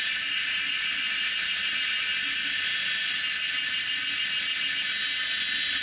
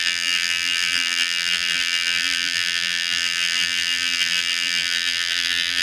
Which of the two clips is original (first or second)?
first